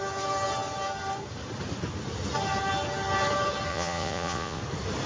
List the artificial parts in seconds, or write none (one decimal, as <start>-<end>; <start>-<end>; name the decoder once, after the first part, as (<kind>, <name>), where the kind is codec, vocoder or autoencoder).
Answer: 3.7-4.6 (vocoder, Vocos)